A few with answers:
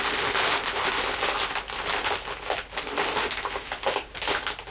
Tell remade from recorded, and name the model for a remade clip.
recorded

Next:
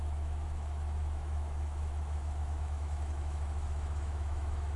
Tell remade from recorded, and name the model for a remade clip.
remade, autoencoder, DAC-VAE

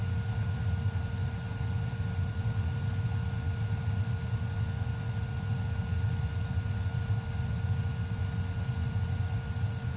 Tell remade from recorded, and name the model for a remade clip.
recorded